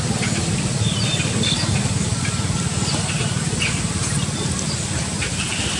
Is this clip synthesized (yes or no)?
no